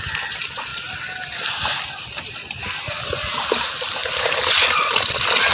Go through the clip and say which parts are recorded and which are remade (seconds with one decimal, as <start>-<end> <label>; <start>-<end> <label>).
0.0-5.5 recorded